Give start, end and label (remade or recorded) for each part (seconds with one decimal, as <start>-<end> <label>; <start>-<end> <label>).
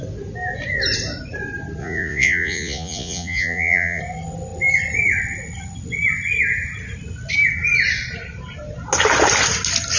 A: 0.0-1.8 recorded; 1.8-4.0 remade; 4.0-10.0 recorded